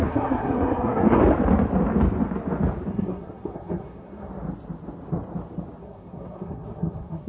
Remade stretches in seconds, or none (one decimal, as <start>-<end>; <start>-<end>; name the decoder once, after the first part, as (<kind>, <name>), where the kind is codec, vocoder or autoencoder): 0.0-1.2 (codec, SNAC); 2.9-4.3; 5.8-7.3